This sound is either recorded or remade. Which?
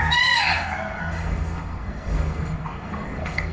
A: remade